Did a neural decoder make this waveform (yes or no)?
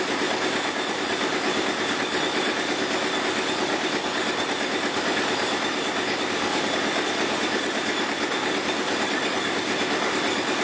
no